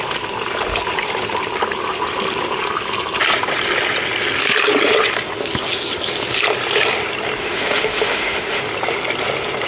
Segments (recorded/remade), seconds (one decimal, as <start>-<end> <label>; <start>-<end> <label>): 0.0-7.4 recorded; 7.4-8.6 remade; 8.6-9.7 recorded